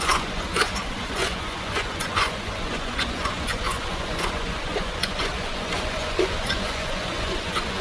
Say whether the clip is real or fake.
fake